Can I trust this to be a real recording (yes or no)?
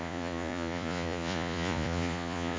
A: no